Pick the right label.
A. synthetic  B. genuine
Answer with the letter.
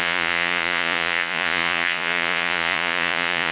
A